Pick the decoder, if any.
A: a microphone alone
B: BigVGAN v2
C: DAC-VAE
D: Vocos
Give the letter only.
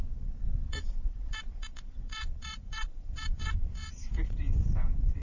D